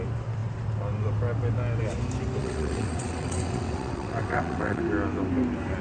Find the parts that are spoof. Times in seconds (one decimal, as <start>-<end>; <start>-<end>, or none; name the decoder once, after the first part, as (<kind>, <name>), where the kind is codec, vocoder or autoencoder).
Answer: 2.4-4.8 (vocoder, WaveNeXt)